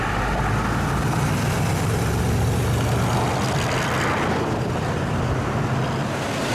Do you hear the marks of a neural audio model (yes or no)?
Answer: no